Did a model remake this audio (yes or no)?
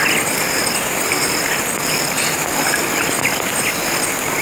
yes